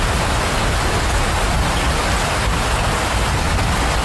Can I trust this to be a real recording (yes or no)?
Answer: yes